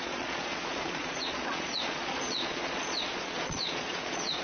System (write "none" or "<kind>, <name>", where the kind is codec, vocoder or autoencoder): vocoder, Vocos